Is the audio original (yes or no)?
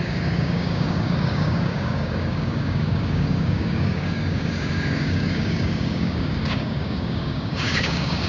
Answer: no